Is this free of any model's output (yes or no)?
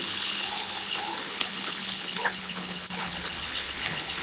no